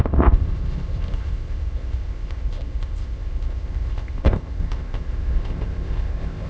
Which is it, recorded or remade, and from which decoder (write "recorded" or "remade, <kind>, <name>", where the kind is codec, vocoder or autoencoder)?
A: remade, codec, ZipCodec